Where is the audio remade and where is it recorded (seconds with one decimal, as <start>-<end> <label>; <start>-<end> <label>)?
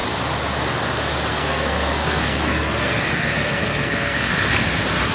0.0-1.3 recorded; 1.3-4.3 remade; 4.3-5.1 recorded